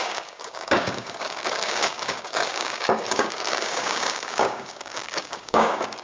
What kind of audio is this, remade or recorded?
remade